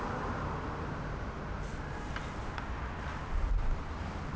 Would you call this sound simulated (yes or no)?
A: no